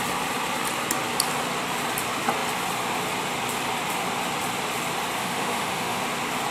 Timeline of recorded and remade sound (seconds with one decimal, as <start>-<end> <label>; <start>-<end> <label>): 0.0-5.2 recorded; 5.2-6.0 remade; 6.0-6.5 recorded